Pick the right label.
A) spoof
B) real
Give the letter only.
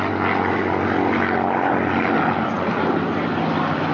B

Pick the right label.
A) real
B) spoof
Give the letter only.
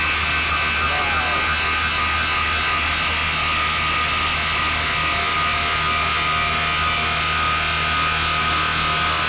A